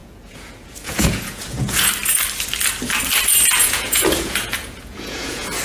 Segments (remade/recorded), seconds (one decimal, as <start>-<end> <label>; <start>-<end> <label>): 0.0-1.9 remade; 1.9-3.6 recorded; 3.6-5.6 remade